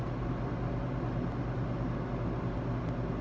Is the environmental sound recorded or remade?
recorded